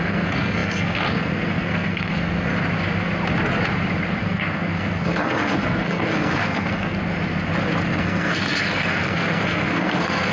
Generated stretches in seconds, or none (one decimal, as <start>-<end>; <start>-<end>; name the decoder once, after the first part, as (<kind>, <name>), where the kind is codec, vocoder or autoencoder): 0.0-2.5 (codec, SNAC); 4.2-7.0; 7.9-10.3